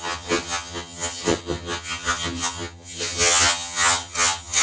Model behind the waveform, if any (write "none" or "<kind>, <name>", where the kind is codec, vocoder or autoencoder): vocoder, HiFi-GAN